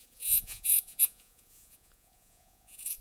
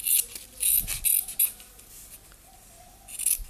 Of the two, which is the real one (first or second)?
second